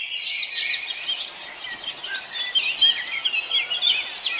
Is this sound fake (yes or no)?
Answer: no